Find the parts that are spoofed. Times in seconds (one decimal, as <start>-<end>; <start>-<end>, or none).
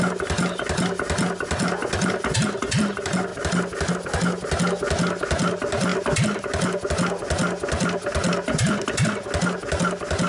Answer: none